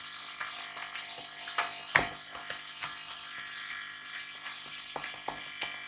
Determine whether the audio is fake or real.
real